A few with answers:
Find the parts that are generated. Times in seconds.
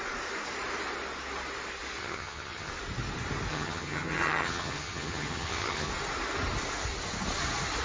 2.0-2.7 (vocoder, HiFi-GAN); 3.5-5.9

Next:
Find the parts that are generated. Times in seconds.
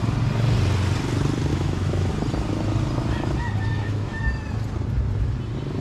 1.5-2.1 (autoencoder, DAC-VAE); 3.7-4.2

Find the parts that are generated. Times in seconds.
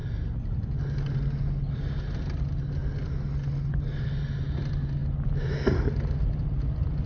none